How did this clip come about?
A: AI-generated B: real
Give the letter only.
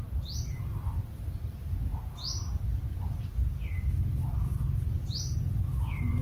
B